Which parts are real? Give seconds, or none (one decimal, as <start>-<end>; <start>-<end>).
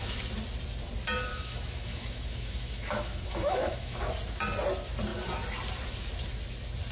0.0-1.3; 4.0-6.9